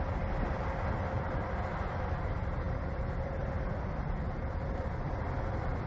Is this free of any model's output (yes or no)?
no